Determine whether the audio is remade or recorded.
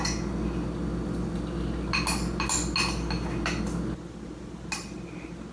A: recorded